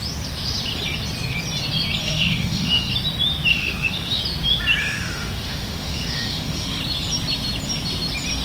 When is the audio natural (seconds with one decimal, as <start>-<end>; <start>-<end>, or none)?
0.0-2.0; 2.9-3.5; 4.2-4.8; 6.8-8.4